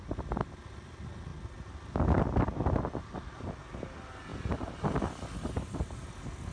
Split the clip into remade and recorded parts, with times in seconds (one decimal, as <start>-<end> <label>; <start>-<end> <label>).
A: 0.0-4.3 recorded; 4.3-6.1 remade; 6.1-6.5 recorded